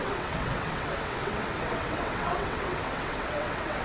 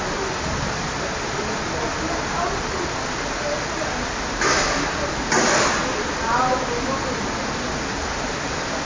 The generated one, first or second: first